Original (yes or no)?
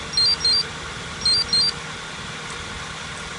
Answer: yes